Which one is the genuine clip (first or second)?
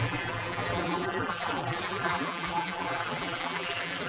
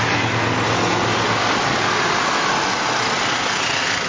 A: second